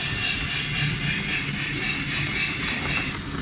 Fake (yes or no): no